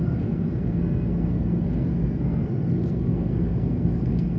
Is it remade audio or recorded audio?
remade